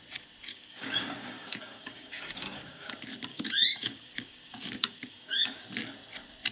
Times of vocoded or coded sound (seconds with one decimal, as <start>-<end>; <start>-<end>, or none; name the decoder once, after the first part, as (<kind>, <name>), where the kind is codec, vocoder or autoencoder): 0.5-2.9 (codec, DAC); 3.3-5.6